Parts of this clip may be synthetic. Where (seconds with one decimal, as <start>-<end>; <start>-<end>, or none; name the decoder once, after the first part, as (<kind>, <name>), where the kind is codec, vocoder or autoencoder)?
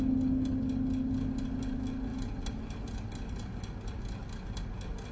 none